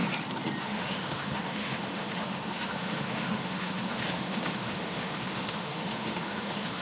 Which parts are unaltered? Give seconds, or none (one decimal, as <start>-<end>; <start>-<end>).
0.0-0.6